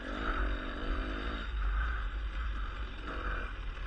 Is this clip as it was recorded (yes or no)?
no